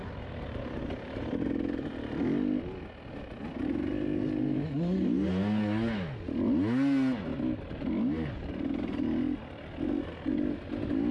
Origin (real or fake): real